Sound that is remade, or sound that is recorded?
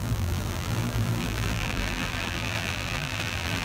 remade